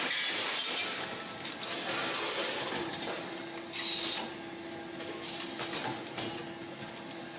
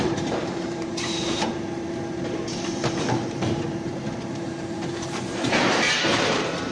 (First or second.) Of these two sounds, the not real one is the second